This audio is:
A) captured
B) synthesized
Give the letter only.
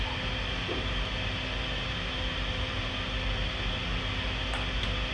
A